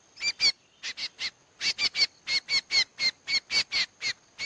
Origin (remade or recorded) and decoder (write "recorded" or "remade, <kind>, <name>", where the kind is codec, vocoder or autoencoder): recorded